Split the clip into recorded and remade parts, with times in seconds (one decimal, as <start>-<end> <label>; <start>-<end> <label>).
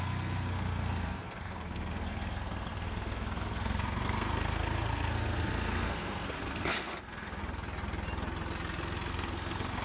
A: 0.0-7.4 remade; 7.4-9.1 recorded; 9.1-9.8 remade